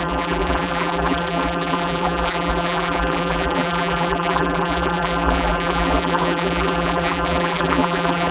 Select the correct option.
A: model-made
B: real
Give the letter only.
A